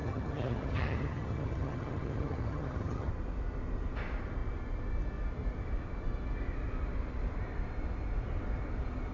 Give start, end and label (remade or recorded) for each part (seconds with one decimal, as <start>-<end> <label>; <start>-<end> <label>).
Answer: 0.0-3.1 remade; 3.1-9.1 recorded